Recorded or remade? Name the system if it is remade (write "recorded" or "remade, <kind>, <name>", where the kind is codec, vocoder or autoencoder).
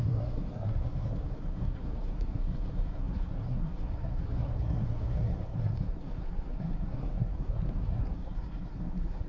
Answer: remade, codec, SNAC